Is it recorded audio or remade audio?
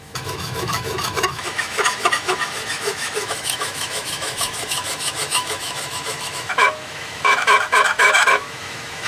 remade